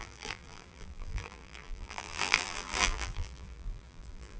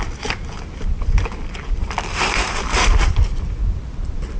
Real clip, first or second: second